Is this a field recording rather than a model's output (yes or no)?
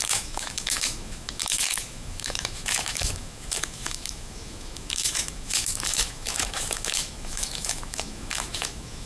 no